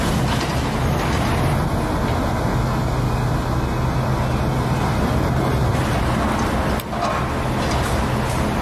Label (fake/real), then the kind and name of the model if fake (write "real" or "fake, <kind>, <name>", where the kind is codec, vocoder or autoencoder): real